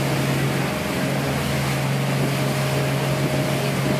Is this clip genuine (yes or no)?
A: yes